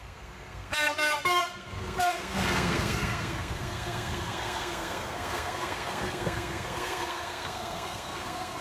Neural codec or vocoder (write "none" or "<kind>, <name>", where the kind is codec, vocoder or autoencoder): codec, SNAC